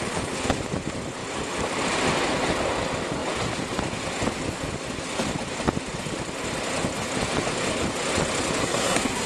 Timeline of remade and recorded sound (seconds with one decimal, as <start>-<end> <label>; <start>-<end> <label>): 0.0-8.6 recorded; 8.6-9.3 remade